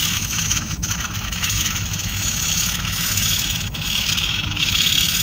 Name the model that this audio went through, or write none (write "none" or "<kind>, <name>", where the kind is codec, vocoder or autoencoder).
autoencoder, DAC-VAE